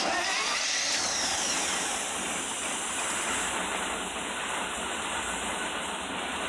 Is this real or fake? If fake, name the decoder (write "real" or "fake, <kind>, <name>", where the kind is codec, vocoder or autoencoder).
real